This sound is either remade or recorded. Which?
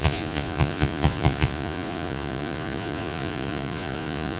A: remade